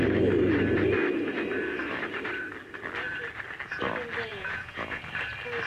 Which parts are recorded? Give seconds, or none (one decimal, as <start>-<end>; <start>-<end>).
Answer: 0.0-4.3; 5.0-5.7